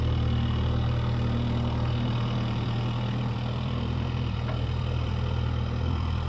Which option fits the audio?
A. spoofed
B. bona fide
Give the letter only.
A